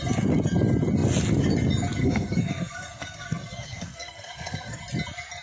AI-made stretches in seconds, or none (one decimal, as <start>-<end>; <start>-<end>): 2.0-4.8